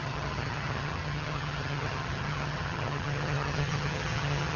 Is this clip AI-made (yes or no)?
yes